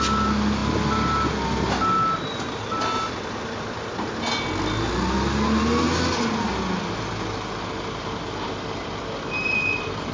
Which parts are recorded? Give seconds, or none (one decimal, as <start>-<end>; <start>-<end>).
0.0-10.1